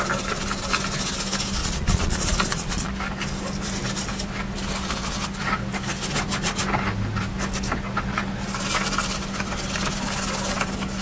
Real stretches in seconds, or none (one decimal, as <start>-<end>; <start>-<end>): 0.0-1.6; 2.9-11.0